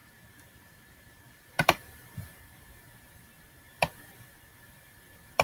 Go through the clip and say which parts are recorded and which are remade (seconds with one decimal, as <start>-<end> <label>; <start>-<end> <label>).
0.0-5.4 remade